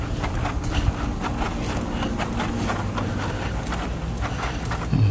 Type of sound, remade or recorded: recorded